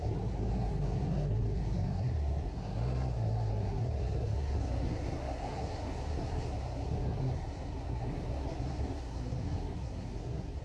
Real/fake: fake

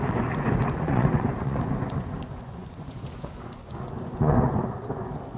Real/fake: fake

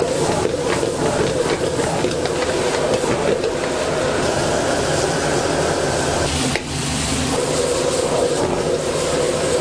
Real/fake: real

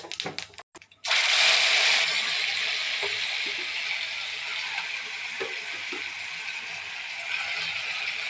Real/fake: real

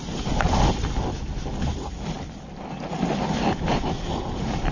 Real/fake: real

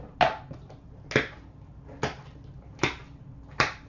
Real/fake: real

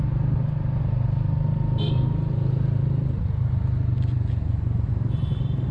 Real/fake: real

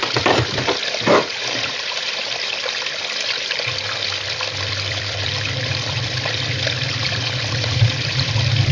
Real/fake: fake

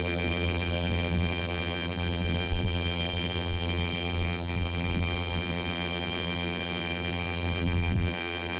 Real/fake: fake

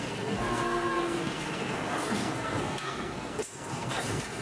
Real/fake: fake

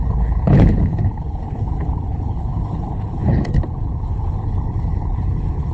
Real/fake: fake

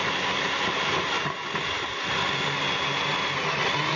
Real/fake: real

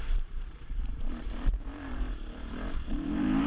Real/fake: fake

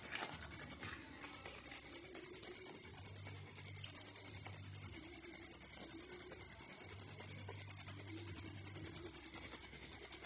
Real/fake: real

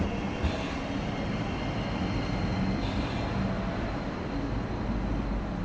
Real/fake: real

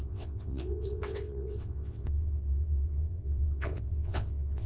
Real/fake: fake